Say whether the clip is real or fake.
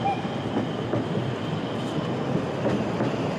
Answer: real